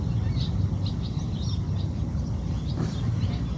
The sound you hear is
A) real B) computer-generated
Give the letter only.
A